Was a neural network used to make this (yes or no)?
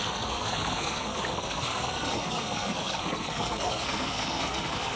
yes